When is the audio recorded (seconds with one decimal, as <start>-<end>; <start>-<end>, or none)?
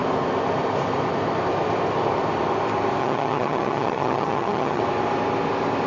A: 0.0-3.0; 4.8-5.9